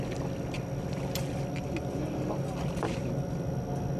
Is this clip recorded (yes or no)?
yes